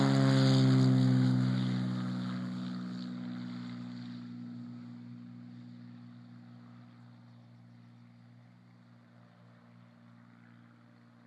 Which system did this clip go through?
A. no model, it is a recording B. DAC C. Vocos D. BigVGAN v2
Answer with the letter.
A